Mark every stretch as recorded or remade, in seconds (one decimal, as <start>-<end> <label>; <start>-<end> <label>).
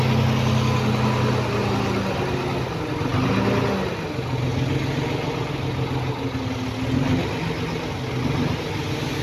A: 0.0-9.2 recorded